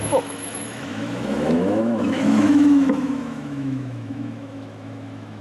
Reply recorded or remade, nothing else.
remade